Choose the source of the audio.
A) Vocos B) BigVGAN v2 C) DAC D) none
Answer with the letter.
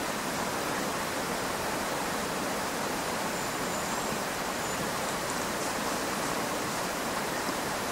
B